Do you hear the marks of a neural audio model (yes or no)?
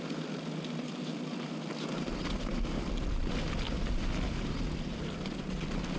no